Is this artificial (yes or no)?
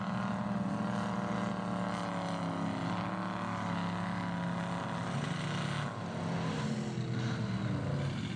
no